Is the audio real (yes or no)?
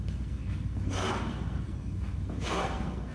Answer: no